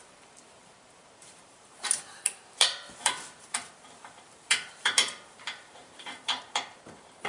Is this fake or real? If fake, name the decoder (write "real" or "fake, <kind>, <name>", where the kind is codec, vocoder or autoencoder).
fake, vocoder, BigVGAN v2